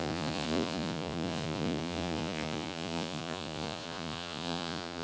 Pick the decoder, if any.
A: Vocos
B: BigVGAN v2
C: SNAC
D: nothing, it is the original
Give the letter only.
A